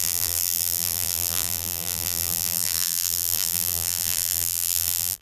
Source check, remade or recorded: remade